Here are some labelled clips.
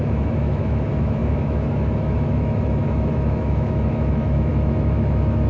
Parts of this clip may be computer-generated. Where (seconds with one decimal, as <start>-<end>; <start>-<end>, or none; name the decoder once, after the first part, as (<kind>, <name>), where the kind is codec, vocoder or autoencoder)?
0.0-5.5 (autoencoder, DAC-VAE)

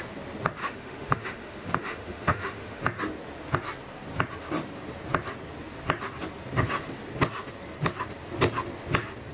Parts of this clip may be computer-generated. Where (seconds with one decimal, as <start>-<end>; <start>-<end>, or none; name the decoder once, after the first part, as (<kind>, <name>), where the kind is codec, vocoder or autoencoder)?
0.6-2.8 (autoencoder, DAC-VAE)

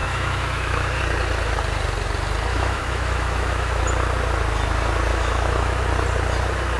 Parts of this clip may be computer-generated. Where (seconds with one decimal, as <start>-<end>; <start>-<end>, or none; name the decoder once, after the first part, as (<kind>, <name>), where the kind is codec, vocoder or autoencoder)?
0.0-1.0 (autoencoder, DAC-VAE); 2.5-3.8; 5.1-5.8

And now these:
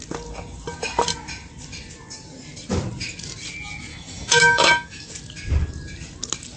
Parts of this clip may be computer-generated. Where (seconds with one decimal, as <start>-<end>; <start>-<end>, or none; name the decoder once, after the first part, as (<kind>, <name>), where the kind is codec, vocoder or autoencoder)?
3.9-5.1 (autoencoder, DAC-VAE)

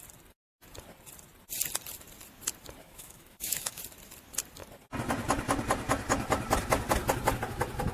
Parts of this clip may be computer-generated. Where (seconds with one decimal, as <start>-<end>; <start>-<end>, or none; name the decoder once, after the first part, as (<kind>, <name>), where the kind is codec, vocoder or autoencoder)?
2.8-3.8 (autoencoder, DAC-VAE)

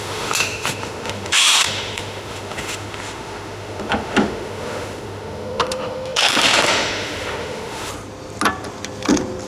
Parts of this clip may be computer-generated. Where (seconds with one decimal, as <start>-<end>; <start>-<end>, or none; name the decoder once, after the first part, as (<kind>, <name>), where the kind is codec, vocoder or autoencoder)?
0.0-7.9 (autoencoder, DAC-VAE)